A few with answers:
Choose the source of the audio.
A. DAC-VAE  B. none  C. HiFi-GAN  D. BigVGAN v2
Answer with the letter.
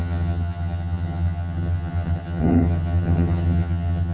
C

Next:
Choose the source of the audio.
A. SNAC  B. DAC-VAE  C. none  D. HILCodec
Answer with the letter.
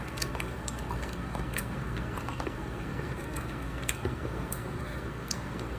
A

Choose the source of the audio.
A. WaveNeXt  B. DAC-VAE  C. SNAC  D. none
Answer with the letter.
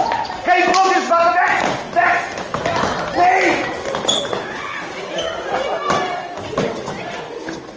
D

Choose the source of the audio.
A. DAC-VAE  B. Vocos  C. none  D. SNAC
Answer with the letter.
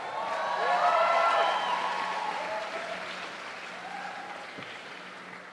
C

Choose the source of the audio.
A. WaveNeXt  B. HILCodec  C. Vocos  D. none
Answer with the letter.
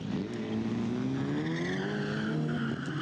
D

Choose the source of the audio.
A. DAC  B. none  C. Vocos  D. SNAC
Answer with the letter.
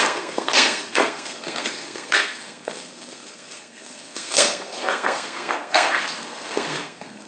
D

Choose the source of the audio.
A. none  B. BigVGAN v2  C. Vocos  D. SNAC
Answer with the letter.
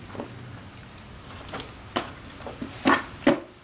A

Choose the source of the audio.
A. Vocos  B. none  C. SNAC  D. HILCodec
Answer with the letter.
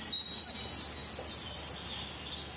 B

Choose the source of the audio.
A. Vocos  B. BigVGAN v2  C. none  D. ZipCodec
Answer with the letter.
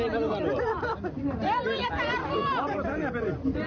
B